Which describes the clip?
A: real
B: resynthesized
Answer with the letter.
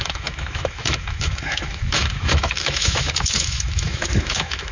B